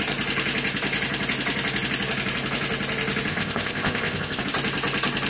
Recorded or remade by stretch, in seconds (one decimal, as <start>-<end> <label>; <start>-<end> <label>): 0.0-3.3 recorded; 3.3-4.4 remade; 4.4-5.3 recorded